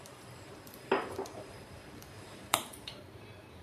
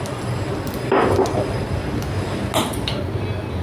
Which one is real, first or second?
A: second